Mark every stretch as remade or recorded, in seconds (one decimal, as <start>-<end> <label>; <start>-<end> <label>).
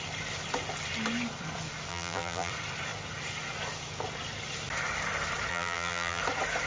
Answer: 0.0-1.9 recorded; 1.9-2.5 remade; 2.5-5.5 recorded; 5.5-6.2 remade; 6.2-6.7 recorded